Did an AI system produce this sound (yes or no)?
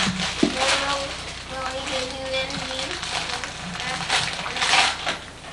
no